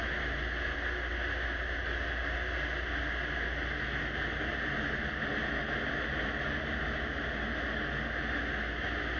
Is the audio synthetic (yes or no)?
no